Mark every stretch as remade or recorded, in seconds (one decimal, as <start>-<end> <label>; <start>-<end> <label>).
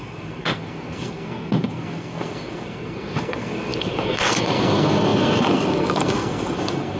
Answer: 0.0-7.0 remade